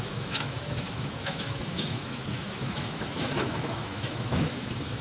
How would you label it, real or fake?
fake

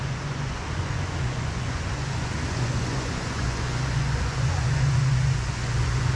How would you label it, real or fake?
fake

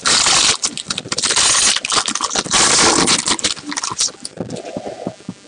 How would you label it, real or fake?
real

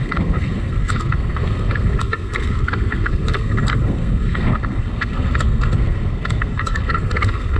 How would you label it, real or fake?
fake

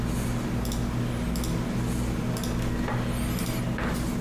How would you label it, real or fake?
real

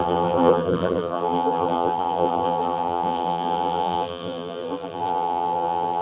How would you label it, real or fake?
fake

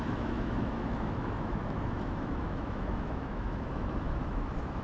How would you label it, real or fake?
fake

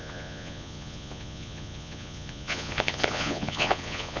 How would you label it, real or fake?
fake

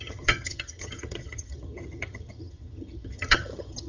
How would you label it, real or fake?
fake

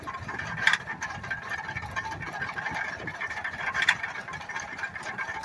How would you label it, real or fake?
fake